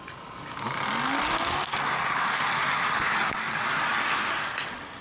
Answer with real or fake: real